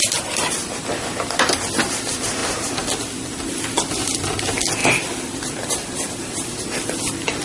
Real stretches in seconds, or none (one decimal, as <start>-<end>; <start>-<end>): 0.0-4.8; 6.6-7.4